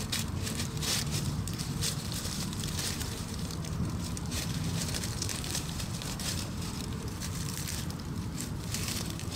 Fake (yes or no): yes